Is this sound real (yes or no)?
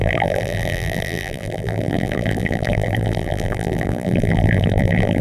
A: no